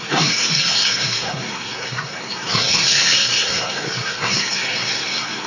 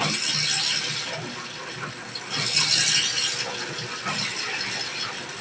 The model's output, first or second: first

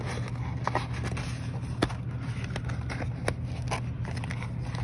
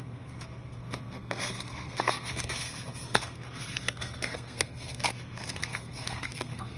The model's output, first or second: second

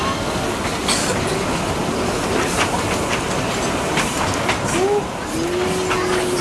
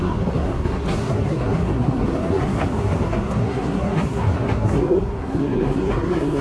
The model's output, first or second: second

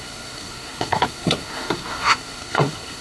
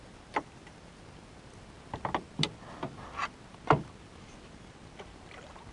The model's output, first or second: first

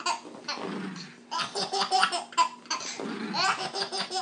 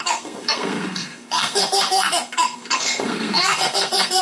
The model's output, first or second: second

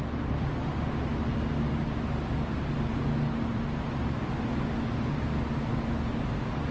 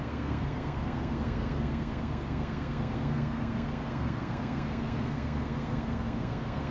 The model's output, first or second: second